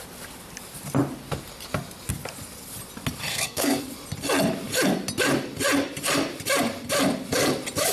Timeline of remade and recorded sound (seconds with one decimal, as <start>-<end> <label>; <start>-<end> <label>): 0.0-3.3 recorded; 3.3-3.8 remade; 3.8-7.9 recorded